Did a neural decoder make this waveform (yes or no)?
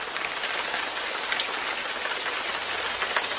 no